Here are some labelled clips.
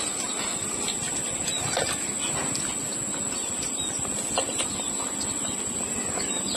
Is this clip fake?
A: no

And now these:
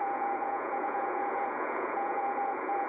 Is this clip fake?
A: yes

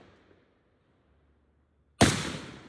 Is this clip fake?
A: no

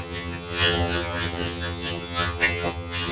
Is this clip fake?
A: yes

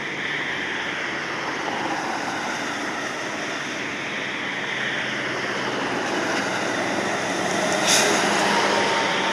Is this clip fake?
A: no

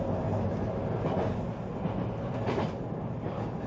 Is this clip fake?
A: no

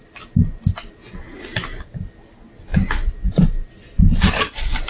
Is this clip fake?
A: no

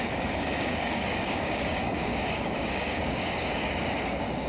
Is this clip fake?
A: yes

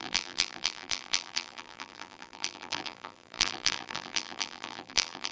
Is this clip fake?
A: yes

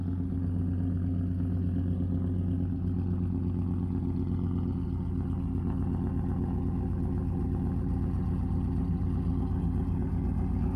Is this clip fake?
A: no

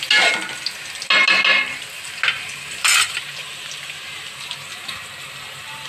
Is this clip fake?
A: no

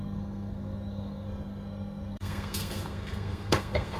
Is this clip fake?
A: yes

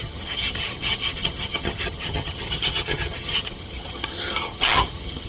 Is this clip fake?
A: yes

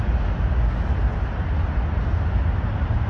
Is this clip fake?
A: no